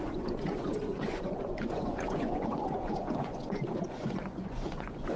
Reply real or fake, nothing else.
fake